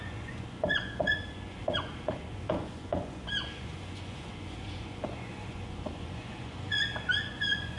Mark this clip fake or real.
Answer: fake